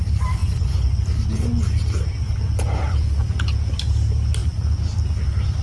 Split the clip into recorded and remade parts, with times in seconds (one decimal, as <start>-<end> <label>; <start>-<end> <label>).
0.0-5.6 recorded